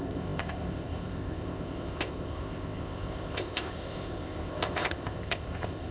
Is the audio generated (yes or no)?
yes